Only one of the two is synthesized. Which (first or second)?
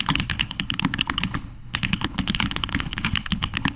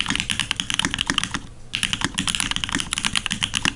first